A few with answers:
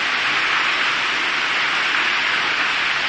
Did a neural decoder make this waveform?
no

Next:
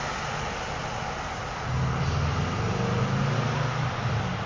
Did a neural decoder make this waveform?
no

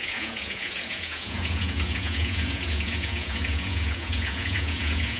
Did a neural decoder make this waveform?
yes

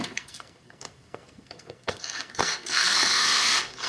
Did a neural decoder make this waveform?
yes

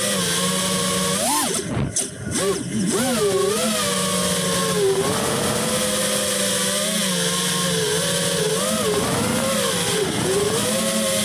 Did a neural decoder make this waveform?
no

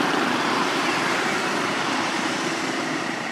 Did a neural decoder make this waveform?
yes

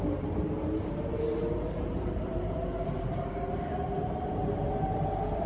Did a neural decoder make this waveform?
yes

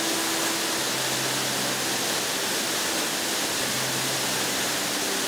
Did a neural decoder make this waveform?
no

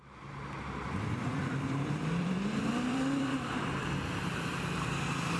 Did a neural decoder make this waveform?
yes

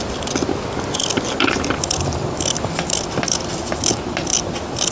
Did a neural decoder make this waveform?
no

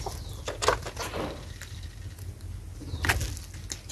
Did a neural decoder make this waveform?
no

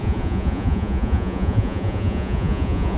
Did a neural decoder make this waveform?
yes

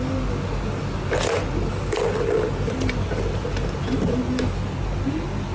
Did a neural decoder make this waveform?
no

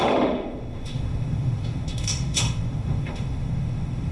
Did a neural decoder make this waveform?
yes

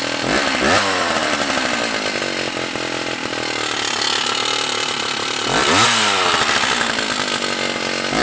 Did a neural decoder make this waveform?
no